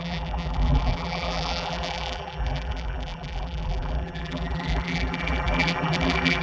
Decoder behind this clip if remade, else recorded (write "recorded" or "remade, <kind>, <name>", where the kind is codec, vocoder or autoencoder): remade, vocoder, BigVGAN v2